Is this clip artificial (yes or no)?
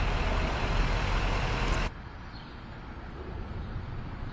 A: yes